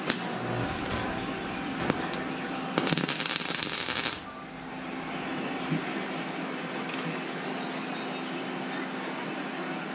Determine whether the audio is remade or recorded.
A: recorded